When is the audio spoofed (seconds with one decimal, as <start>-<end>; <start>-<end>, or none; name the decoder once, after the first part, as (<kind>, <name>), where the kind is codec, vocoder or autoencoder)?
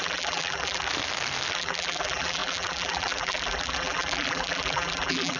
0.0-0.9 (vocoder, BigVGAN v2); 1.5-5.4